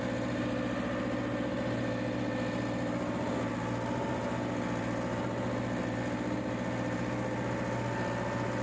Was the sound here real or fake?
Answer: real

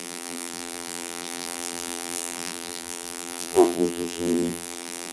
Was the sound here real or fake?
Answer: fake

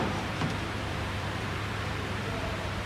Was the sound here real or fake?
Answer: fake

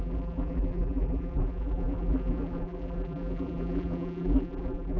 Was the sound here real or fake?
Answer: fake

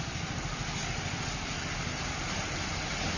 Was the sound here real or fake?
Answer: real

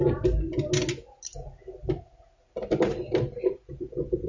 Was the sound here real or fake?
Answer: real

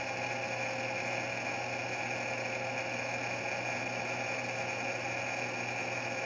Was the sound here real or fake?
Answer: real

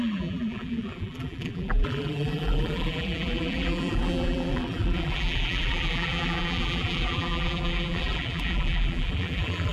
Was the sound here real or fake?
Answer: fake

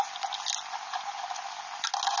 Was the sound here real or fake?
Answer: real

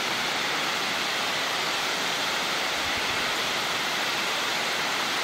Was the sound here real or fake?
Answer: fake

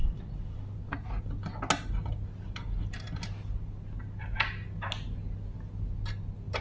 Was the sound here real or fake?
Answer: real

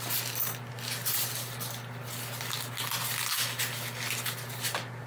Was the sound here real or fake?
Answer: real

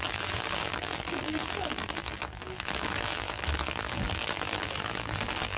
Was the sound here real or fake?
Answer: fake